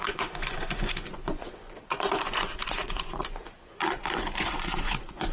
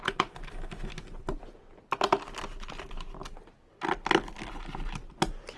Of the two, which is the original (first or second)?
second